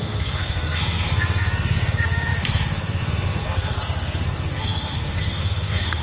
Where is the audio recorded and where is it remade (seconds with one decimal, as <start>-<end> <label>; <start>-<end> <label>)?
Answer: 0.0-6.0 remade